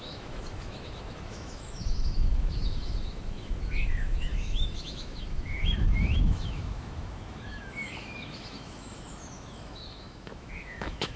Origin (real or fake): fake